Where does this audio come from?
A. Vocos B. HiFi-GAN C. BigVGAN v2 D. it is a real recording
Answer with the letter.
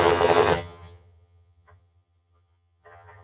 B